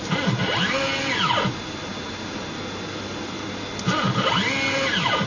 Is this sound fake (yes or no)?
no